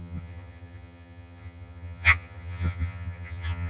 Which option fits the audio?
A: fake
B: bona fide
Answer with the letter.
A